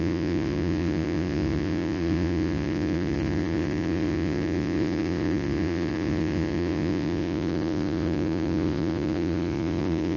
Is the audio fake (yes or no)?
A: yes